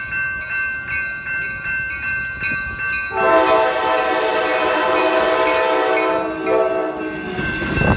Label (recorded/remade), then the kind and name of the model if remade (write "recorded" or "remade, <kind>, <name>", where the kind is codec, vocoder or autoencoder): recorded